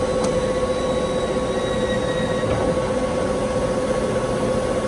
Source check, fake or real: real